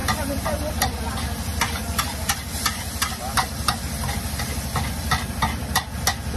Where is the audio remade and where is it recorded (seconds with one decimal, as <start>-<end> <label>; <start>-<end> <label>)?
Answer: 0.0-1.0 remade; 1.0-1.5 recorded; 1.5-5.3 remade; 5.3-6.4 recorded